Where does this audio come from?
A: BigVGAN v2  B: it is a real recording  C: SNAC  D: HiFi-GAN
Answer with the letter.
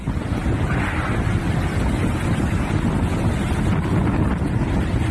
B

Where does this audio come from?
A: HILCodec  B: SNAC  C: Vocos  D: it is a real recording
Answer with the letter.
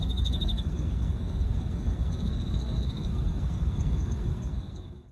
B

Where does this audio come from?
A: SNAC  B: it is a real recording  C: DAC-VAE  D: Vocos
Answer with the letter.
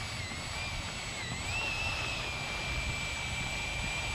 B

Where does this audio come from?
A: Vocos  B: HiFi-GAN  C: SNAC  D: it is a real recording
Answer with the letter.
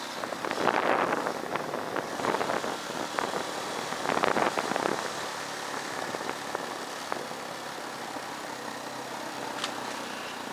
D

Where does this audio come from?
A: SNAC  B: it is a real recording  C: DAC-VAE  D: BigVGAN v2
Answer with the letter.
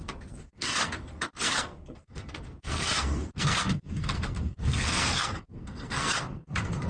A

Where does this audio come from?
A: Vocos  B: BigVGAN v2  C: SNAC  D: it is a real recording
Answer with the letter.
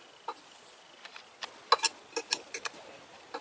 D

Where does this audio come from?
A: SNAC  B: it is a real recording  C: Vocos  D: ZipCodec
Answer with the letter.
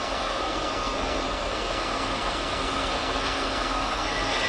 A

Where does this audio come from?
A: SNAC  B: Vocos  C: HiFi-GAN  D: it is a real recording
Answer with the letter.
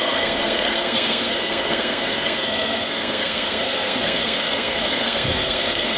A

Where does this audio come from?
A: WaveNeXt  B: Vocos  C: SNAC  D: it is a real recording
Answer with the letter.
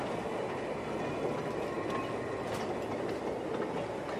D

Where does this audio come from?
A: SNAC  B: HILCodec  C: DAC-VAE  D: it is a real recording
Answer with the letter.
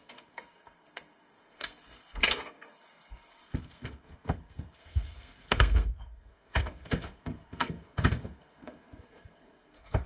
A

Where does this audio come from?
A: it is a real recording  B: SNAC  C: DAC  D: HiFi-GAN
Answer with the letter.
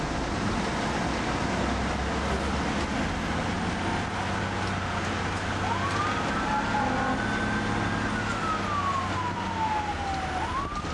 A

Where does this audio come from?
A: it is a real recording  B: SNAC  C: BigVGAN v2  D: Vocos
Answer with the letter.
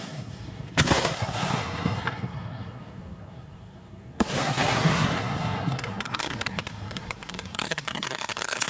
B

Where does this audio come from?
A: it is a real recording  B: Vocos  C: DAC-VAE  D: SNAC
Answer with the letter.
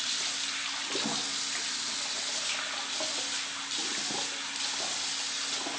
A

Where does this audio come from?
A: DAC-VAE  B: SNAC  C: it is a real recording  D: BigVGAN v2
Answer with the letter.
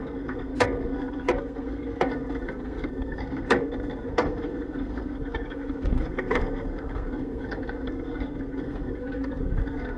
B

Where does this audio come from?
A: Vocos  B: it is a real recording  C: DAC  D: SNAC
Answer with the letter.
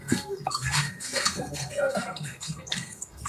D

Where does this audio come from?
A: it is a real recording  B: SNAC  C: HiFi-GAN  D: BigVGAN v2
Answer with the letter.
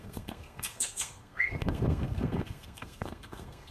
B